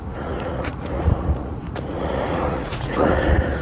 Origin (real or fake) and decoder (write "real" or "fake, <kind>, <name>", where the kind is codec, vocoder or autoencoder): fake, vocoder, Vocos